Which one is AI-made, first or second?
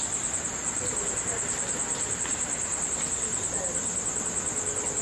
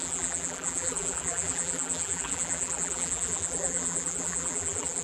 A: second